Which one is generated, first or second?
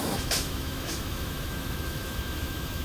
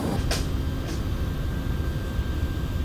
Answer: first